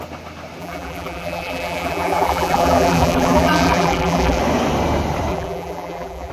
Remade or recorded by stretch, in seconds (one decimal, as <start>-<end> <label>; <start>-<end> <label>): 0.0-0.6 recorded; 0.6-4.4 remade; 4.4-5.3 recorded; 5.3-6.3 remade